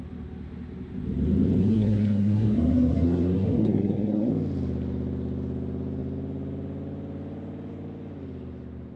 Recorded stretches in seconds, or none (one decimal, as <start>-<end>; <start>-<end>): 0.0-1.6; 4.3-9.0